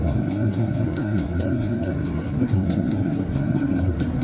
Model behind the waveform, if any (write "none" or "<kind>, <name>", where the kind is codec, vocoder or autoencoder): codec, SNAC